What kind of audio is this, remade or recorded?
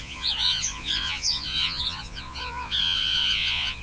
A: remade